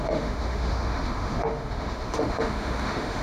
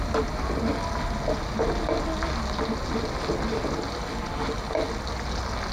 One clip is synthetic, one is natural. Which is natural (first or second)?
second